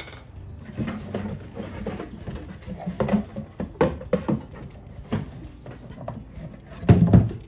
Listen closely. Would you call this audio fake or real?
real